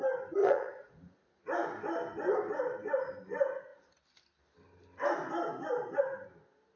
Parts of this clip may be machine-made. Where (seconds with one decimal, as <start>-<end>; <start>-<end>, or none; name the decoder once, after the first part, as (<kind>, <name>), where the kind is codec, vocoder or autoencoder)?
0.4-1.4 (vocoder, Vocos)